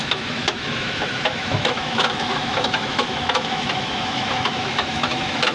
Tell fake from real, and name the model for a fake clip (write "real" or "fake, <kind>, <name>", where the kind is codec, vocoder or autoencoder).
fake, autoencoder, DAC-VAE